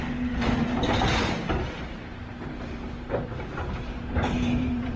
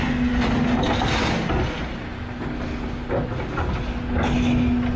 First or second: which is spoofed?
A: first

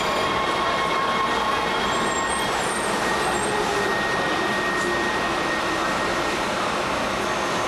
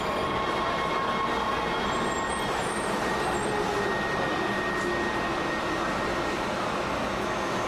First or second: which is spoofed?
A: first